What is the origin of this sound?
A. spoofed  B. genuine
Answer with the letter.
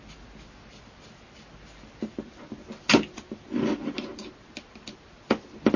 B